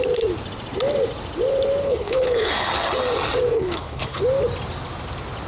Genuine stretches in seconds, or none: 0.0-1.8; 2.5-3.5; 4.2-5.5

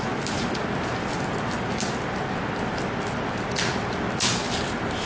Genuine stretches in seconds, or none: 0.0-5.1